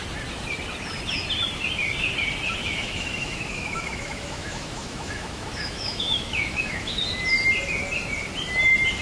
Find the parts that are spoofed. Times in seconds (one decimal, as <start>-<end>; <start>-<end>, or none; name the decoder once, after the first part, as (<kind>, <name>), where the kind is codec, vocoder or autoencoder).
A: 2.6-7.0 (autoencoder, DAC-VAE)